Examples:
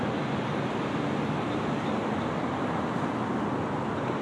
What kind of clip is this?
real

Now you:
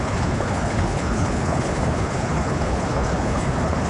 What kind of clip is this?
fake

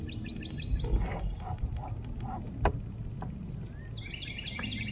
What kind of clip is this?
real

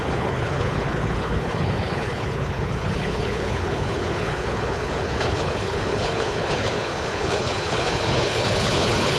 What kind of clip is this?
fake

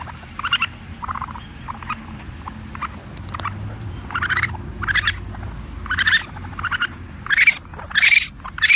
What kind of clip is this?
real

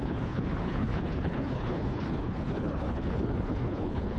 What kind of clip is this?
fake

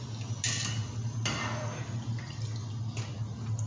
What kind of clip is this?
real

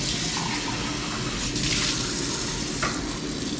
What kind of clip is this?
real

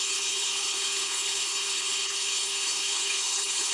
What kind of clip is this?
fake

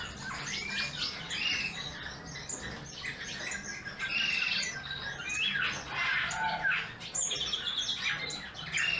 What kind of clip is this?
real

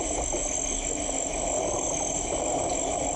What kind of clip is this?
real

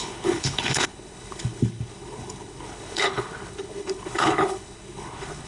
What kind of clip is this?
fake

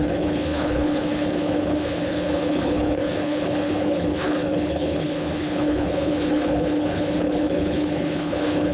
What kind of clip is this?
fake